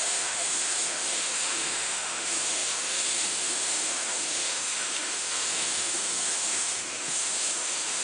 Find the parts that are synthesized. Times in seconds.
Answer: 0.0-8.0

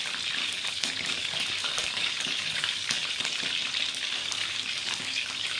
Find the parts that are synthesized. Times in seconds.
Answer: 0.4-3.1; 4.2-5.6

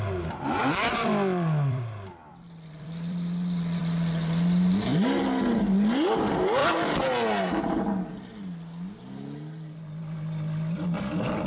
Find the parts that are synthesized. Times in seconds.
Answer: 0.6-3.8

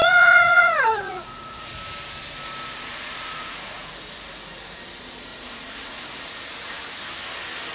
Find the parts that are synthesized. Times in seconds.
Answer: 0.0-1.7; 2.9-3.9; 5.3-6.9

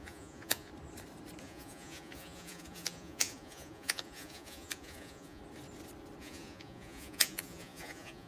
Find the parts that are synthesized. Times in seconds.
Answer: 0.0-0.7; 1.4-5.4; 6.2-8.3

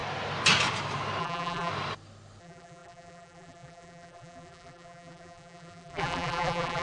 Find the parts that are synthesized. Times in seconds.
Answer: 1.2-1.7; 2.4-6.8

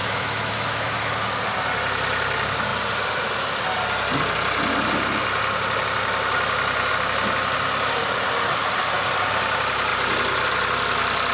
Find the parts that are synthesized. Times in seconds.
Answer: 0.0-1.1

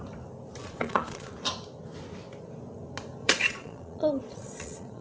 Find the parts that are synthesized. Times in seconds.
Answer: 0.6-1.3; 3.2-5.0